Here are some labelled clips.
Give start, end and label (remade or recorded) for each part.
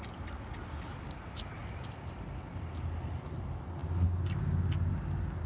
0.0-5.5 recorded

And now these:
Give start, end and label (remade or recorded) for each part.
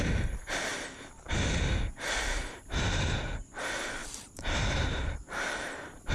0.0-2.4 recorded; 2.4-3.3 remade; 3.3-4.0 recorded; 4.0-6.1 remade